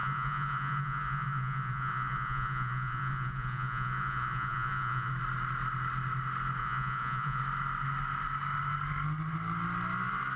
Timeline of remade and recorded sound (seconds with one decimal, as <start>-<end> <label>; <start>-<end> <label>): 0.0-5.1 remade; 5.1-6.6 recorded; 6.6-7.4 remade; 7.4-10.4 recorded